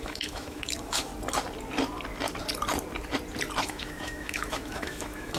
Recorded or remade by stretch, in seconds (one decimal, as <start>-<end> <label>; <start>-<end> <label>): 0.0-1.1 remade; 1.1-3.6 recorded; 3.6-5.4 remade